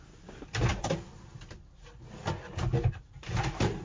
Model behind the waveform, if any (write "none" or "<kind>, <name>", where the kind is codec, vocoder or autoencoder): none